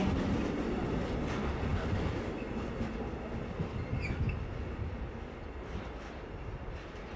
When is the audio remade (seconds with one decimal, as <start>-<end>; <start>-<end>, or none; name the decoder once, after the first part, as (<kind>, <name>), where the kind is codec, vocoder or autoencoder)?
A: none